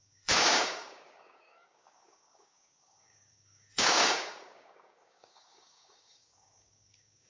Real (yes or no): no